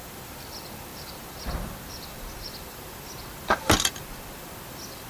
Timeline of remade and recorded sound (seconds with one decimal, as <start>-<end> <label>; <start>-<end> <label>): 0.0-5.1 remade